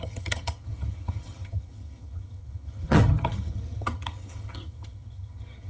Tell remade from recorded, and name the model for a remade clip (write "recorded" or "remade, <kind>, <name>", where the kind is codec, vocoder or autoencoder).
remade, vocoder, HiFi-GAN